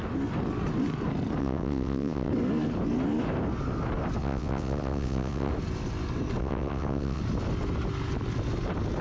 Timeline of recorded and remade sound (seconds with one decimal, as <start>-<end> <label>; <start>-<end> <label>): 0.0-1.4 recorded; 1.4-2.3 remade; 2.3-4.2 recorded; 4.2-5.5 remade; 5.5-6.4 recorded; 6.4-7.2 remade; 7.2-9.0 recorded